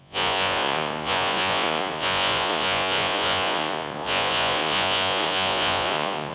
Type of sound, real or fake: fake